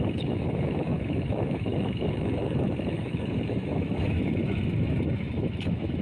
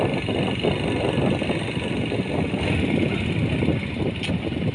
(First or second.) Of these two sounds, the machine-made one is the first